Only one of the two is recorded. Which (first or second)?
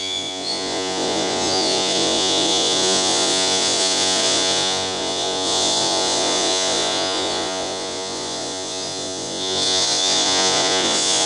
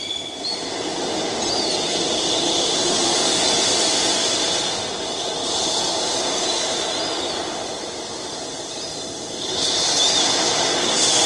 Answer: second